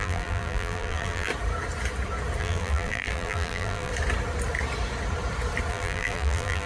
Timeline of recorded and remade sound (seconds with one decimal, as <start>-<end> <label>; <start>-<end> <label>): 0.0-1.3 remade; 1.3-2.4 recorded; 2.4-3.9 remade; 3.9-5.7 recorded; 5.7-6.7 remade